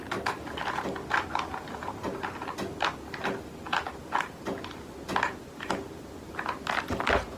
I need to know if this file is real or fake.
real